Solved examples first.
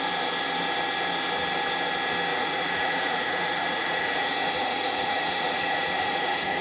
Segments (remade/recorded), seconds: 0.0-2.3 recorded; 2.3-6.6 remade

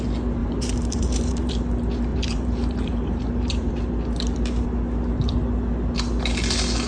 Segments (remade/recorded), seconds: 0.0-0.4 recorded; 0.4-1.5 remade; 1.5-2.1 recorded; 2.1-3.7 remade; 3.7-6.9 recorded

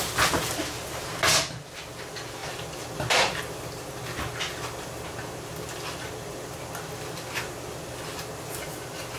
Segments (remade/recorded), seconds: 0.0-9.2 recorded